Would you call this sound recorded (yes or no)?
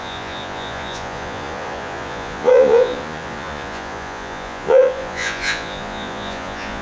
no